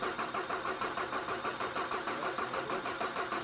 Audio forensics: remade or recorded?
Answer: recorded